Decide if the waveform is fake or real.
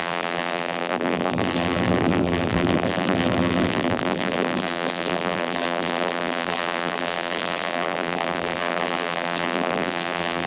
fake